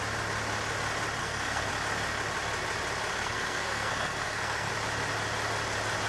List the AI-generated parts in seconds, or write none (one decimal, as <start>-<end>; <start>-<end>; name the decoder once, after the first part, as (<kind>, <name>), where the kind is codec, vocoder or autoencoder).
1.2-1.7 (codec, SNAC); 3.1-4.7